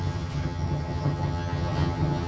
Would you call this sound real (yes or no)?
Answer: no